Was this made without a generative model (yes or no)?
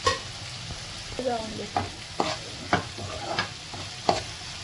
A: yes